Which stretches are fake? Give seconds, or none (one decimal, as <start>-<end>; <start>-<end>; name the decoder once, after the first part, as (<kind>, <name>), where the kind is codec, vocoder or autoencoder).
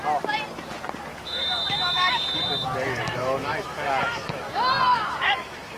1.1-4.5 (autoencoder, DAC-VAE); 4.9-5.8